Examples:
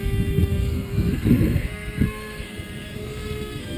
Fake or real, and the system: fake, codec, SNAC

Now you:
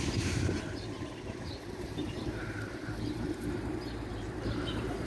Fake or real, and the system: fake, vocoder, BigVGAN v2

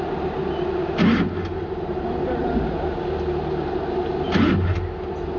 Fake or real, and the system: real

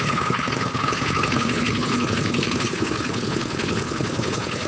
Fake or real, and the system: fake, codec, HILCodec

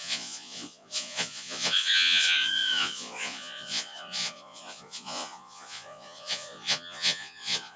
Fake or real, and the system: fake, vocoder, Vocos